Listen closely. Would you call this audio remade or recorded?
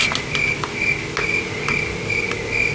recorded